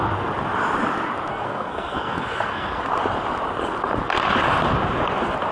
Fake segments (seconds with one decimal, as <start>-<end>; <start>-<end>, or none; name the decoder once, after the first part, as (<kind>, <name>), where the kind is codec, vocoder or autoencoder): 1.3-2.8 (codec, SNAC)